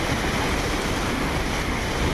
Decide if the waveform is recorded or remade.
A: recorded